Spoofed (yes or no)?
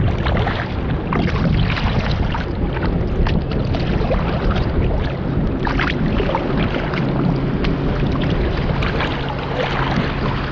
no